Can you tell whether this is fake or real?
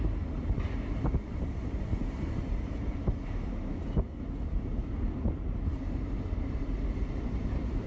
fake